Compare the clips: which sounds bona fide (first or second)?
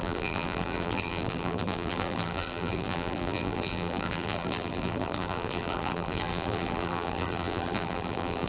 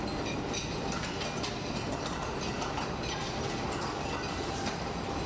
second